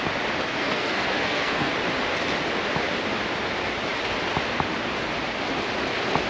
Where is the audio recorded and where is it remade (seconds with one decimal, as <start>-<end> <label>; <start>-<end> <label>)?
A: 0.0-0.5 recorded; 0.5-1.7 remade; 1.7-6.3 recorded